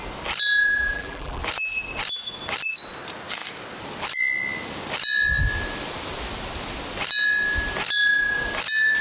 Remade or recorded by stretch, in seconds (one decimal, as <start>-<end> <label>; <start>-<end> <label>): 0.0-0.7 recorded; 0.7-1.4 remade; 1.4-9.0 recorded